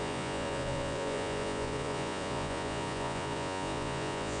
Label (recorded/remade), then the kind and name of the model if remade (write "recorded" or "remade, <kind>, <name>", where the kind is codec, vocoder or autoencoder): remade, vocoder, Vocos